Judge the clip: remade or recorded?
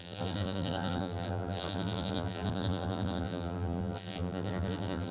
remade